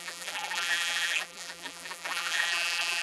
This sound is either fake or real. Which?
fake